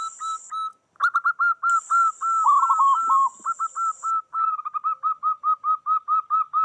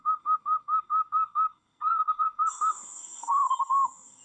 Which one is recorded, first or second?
first